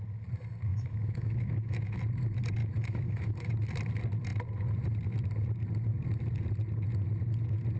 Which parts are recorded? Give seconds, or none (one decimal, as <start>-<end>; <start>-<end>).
0.0-0.7; 2.0-2.6; 3.5-7.8